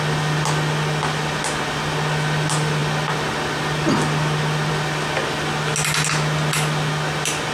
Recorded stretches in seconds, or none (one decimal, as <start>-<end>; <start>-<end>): 0.0-7.5